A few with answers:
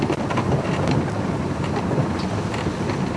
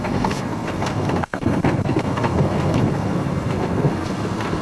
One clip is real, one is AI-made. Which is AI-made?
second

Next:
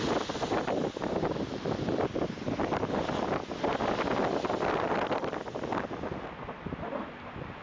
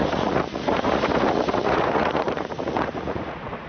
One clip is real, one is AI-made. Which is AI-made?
second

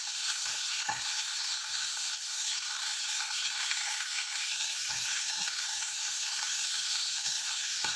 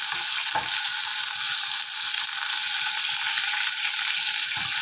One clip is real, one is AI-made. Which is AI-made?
first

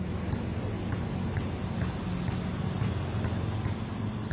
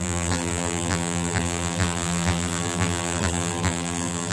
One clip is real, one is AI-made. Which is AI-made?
second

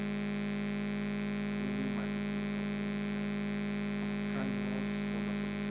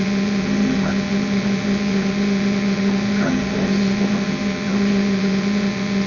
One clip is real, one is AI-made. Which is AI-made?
second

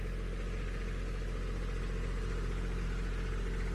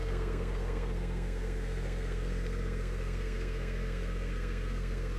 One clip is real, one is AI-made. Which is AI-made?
second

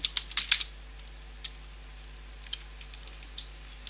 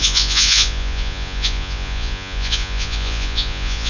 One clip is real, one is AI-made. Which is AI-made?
second